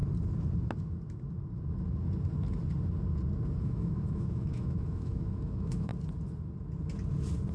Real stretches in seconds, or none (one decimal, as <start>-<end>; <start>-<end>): 0.0-3.6; 5.9-7.5